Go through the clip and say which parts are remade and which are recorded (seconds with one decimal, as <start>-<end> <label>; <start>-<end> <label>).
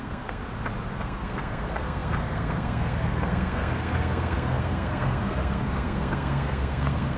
0.0-0.4 remade; 0.4-1.0 recorded; 1.0-7.2 remade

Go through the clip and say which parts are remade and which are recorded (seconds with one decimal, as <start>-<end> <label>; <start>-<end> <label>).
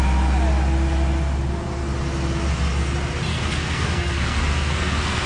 0.0-3.3 recorded; 3.3-5.3 remade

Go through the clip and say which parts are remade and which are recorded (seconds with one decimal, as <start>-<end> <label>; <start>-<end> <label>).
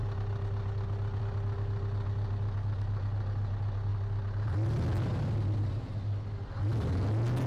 0.0-7.5 recorded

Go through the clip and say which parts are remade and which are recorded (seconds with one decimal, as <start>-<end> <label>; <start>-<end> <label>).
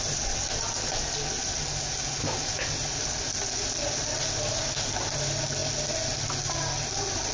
0.0-7.3 recorded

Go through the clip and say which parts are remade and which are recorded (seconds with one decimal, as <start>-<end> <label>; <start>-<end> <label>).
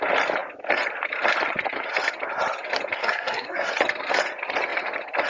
0.0-3.0 recorded; 3.0-3.7 remade; 3.7-5.3 recorded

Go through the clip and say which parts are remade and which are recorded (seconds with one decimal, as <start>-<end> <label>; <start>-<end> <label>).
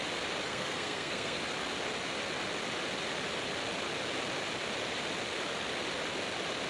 0.0-0.5 recorded; 0.5-1.4 remade; 1.4-6.7 recorded